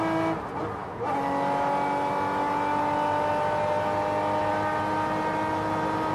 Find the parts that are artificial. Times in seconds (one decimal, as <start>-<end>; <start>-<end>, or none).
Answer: none